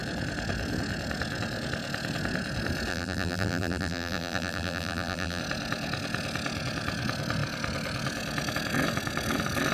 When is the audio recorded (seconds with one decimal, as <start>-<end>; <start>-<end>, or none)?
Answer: 0.0-2.9; 5.4-9.7